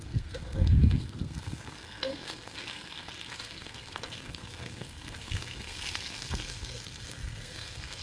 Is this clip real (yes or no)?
no